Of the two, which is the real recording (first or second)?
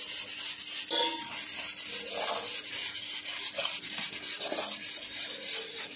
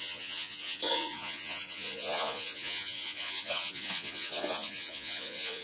first